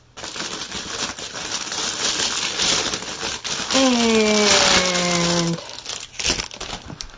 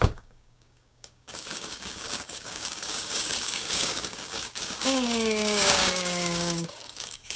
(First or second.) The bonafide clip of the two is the first